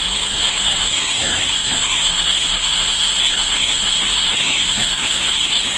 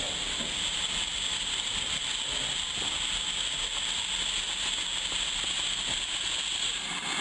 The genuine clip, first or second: second